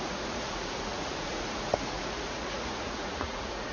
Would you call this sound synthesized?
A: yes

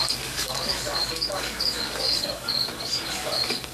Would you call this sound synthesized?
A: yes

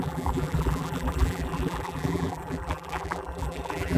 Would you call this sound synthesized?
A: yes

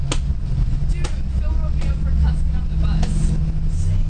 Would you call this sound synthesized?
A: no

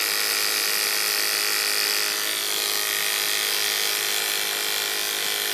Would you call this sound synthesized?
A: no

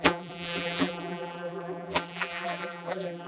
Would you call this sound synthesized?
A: yes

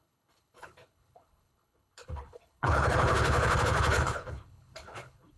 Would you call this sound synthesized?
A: yes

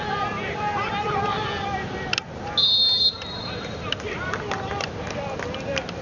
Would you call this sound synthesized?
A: no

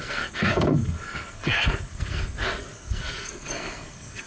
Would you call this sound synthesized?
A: yes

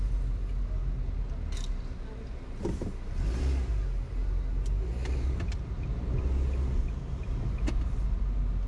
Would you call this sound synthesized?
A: no